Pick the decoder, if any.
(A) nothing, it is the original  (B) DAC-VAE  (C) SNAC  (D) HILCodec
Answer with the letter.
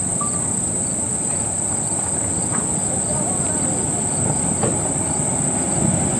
A